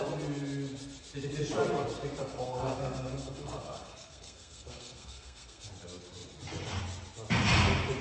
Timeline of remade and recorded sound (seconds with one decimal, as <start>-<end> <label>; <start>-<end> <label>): 0.0-2.2 recorded; 2.2-5.7 remade; 5.7-8.0 recorded

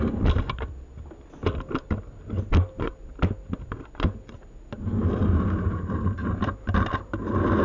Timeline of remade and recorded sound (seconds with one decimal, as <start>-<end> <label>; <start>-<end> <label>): 0.0-7.6 recorded

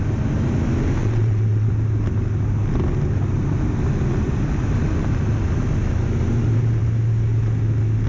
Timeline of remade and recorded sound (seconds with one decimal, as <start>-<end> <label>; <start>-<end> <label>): 0.0-1.0 recorded; 1.0-1.7 remade; 1.7-8.1 recorded

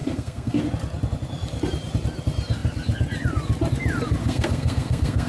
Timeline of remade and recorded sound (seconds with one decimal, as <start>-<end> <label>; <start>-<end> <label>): 0.0-0.6 remade; 0.6-4.2 recorded; 4.2-5.3 remade

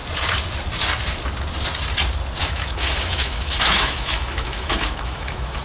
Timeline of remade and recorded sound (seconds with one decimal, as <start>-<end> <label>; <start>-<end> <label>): 0.0-2.4 recorded; 2.4-5.6 remade

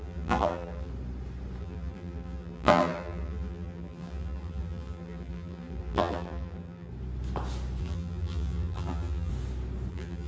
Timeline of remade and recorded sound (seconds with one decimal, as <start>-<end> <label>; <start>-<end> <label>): 0.0-0.9 remade; 0.9-1.6 recorded; 1.6-6.9 remade; 6.9-7.8 recorded; 7.8-9.3 remade; 9.3-9.9 recorded; 9.9-10.3 remade